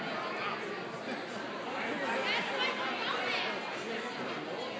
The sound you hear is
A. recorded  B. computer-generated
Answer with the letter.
A